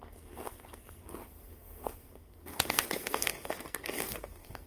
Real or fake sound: fake